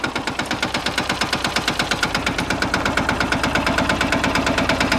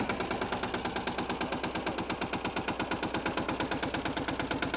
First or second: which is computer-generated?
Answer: first